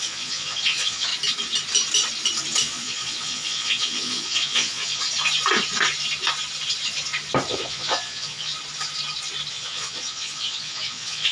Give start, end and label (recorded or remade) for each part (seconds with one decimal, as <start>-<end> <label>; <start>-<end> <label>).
0.0-1.1 remade; 1.1-2.6 recorded; 2.6-5.0 remade; 5.0-7.5 recorded; 7.5-8.5 remade; 8.5-9.5 recorded; 9.5-11.3 remade